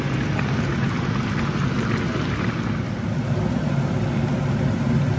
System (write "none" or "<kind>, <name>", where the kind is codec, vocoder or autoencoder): none